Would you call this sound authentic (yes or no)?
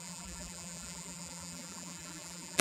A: no